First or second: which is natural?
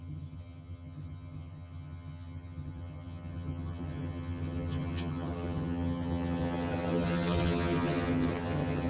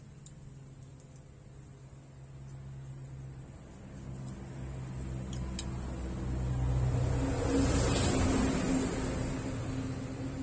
second